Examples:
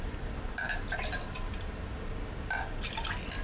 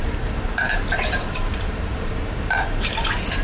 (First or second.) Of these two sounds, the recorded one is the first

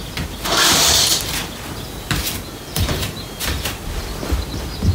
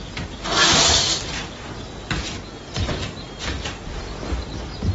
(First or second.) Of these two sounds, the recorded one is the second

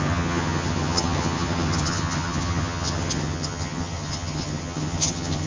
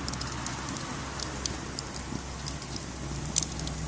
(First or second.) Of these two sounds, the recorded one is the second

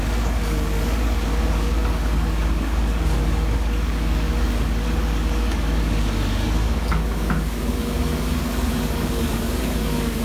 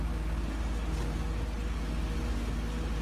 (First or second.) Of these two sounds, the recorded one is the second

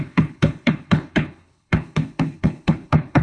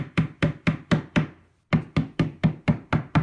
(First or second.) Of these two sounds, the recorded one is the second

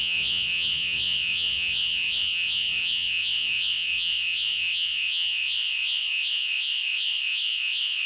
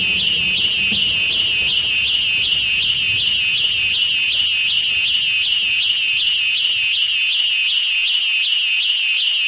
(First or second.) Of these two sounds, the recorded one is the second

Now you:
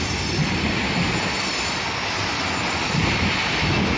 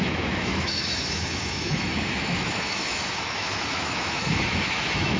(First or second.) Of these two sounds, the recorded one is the first